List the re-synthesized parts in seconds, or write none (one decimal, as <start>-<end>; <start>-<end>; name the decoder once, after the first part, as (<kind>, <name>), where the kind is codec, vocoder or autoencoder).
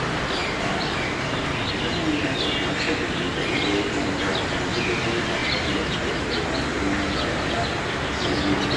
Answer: 5.4-6.3 (vocoder, BigVGAN v2); 6.7-7.5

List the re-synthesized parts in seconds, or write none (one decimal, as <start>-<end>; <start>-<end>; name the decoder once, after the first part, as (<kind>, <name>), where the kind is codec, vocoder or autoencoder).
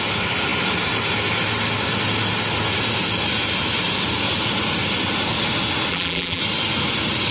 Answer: 5.9-6.4 (vocoder, BigVGAN v2)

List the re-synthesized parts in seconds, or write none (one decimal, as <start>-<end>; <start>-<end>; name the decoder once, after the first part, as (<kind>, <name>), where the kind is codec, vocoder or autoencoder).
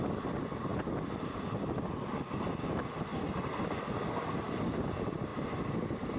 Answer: none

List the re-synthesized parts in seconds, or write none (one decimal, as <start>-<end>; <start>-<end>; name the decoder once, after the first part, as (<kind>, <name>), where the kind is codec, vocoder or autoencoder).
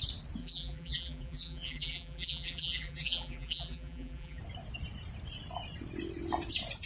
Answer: 0.4-4.4 (vocoder, BigVGAN v2)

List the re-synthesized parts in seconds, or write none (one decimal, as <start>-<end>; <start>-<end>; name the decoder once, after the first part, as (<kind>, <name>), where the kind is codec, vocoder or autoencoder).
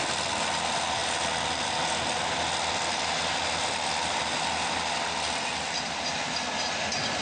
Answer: none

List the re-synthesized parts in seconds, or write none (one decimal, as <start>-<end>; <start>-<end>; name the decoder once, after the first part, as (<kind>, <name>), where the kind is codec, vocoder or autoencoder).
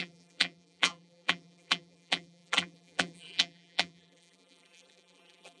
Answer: 0.0-5.6 (vocoder, BigVGAN v2)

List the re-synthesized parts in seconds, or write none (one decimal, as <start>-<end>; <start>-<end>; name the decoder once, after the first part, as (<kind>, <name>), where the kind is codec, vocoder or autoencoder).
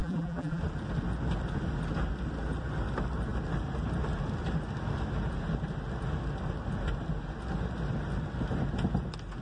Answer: 0.0-0.6 (vocoder, BigVGAN v2)